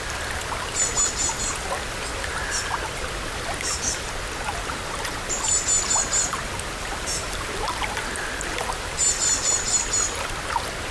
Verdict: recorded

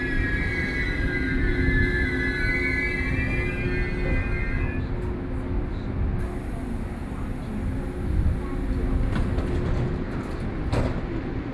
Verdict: recorded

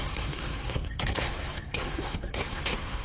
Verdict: remade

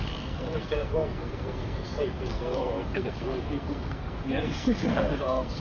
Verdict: remade